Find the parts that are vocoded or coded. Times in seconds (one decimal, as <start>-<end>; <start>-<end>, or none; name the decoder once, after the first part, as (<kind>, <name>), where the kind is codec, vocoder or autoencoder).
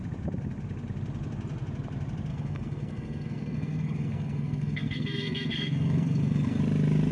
2.3-6.6 (codec, SNAC)